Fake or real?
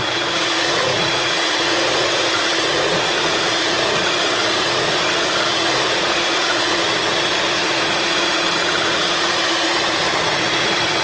fake